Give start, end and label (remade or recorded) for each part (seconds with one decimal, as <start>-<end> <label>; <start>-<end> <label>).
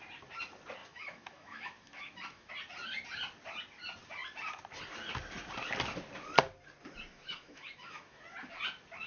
0.0-0.8 recorded; 0.8-2.5 remade; 2.5-7.1 recorded; 7.1-8.2 remade; 8.2-9.1 recorded